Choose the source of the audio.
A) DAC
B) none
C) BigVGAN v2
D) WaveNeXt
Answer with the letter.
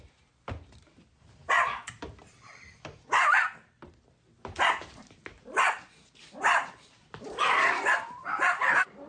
C